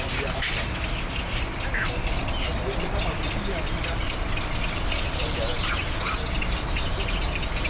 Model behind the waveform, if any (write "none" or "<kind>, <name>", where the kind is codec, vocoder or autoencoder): none